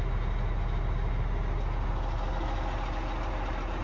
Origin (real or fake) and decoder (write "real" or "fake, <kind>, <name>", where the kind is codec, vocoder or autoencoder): real